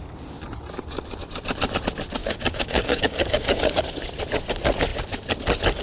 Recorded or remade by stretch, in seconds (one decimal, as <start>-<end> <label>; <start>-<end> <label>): 0.0-2.2 recorded; 2.2-3.8 remade; 3.8-5.8 recorded